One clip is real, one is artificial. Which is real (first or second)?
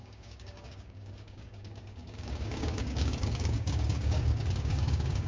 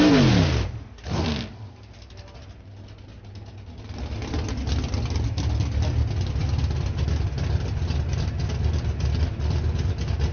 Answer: second